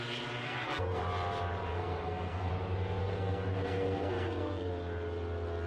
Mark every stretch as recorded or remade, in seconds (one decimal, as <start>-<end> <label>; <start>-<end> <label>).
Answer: 0.0-0.4 recorded; 0.4-1.0 remade; 1.0-1.7 recorded; 1.7-2.5 remade; 2.5-3.0 recorded; 3.0-4.7 remade; 4.7-5.7 recorded